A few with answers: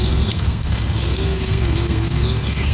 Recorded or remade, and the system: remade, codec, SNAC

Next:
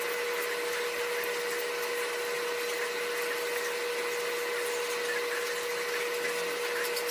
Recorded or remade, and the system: recorded